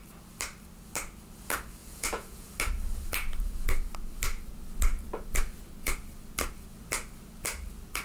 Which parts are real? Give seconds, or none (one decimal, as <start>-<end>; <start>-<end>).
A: 0.0-1.8; 2.5-8.0